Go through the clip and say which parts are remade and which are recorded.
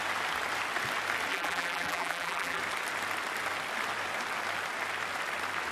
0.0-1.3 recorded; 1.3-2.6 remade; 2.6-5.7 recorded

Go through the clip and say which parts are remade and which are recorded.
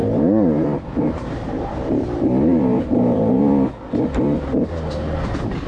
0.0-3.4 remade; 3.4-5.7 recorded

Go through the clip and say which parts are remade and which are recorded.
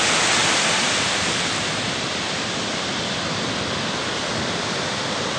0.0-5.4 recorded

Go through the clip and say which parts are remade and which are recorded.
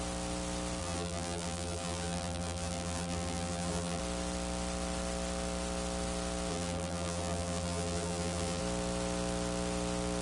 0.0-0.8 recorded; 0.8-4.0 remade; 4.0-6.5 recorded; 6.5-8.6 remade; 8.6-10.2 recorded